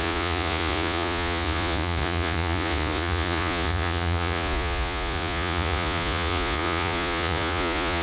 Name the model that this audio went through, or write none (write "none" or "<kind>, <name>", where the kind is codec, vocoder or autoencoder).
vocoder, Vocos